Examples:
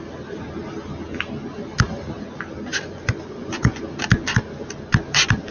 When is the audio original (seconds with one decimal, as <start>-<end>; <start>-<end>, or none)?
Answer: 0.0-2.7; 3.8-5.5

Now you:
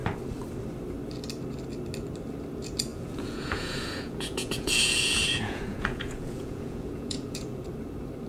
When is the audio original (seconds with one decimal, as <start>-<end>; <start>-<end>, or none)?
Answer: 0.0-2.9; 7.7-8.3

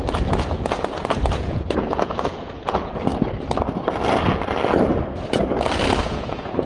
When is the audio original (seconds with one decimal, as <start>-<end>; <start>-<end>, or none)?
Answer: 3.1-6.0

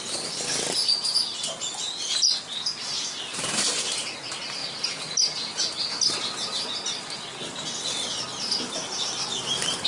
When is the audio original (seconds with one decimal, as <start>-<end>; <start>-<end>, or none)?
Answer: 0.0-9.9

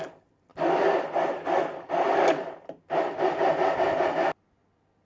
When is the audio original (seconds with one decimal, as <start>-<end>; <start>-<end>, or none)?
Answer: 0.0-5.0

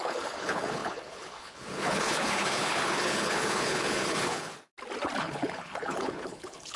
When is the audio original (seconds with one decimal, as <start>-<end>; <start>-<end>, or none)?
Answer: 4.5-5.2